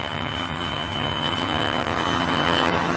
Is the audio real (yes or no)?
no